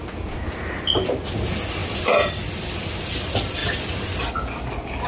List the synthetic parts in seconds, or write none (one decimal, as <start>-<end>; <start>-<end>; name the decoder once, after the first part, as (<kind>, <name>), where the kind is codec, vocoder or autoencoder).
none